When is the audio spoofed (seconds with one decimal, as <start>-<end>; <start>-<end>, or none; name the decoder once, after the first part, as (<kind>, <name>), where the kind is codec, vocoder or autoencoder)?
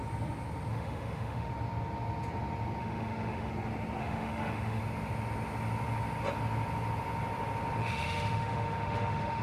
0.7-1.5 (autoencoder, DAC-VAE); 2.8-3.5; 4.0-4.8; 7.8-9.4